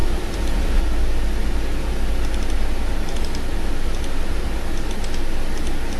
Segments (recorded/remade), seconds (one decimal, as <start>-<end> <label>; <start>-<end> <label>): 0.0-0.8 remade; 0.8-6.0 recorded